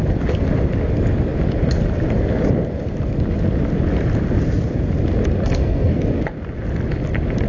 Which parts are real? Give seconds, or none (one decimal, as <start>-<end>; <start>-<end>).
0.0-5.4; 6.0-7.5